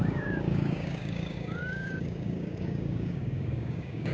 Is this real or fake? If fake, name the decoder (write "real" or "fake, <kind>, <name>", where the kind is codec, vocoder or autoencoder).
fake, codec, DAC